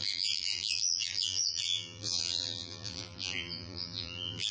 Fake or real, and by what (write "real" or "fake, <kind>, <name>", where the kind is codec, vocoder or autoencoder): fake, vocoder, BigVGAN v2